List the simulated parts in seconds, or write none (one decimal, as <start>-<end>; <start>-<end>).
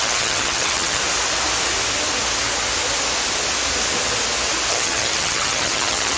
0.0-1.0; 4.7-6.2